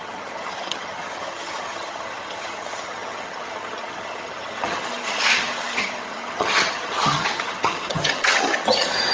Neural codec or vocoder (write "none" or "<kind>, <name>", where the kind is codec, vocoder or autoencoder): vocoder, HiFi-GAN